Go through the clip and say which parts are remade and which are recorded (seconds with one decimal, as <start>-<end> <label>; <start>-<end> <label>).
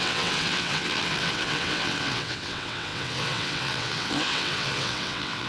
0.0-5.5 remade